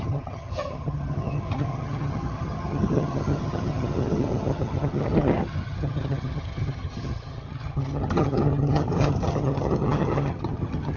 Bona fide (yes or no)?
no